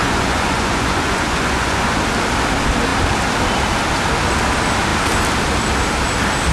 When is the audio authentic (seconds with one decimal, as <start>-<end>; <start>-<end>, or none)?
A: 2.0-6.5